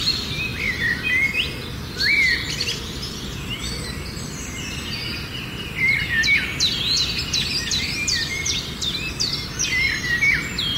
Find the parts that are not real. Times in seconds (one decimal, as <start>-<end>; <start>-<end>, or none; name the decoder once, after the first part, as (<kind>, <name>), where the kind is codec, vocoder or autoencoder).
none